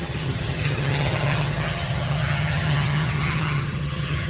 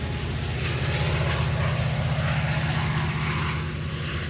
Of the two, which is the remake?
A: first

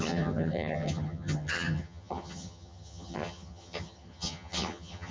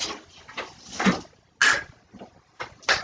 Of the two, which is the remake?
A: first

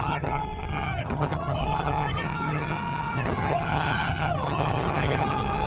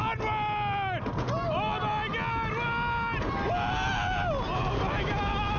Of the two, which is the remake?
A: first